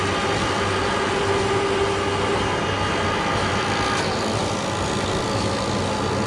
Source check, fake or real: real